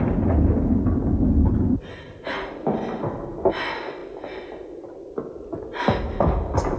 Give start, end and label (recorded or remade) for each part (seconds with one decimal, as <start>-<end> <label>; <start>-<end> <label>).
0.0-6.8 recorded